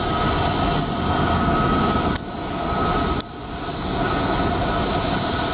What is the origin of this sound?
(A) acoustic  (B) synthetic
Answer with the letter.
A